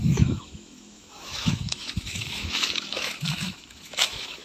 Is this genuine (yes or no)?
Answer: no